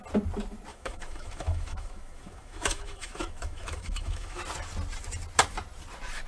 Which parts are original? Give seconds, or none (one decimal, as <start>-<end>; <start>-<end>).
0.0-0.7; 4.4-6.3